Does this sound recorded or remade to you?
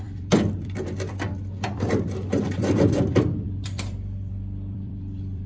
remade